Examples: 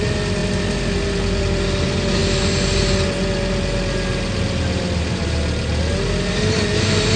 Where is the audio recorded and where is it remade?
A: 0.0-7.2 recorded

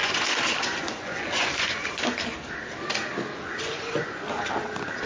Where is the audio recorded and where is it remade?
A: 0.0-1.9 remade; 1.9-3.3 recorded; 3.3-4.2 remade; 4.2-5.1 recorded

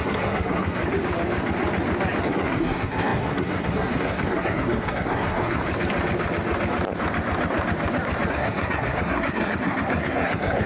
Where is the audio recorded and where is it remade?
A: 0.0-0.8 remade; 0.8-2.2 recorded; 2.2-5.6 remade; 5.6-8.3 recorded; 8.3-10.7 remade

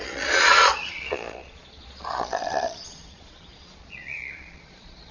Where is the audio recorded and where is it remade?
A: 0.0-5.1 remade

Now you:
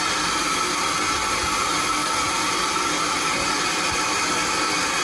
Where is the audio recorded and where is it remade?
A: 0.0-2.0 recorded; 2.0-3.5 remade; 3.5-5.0 recorded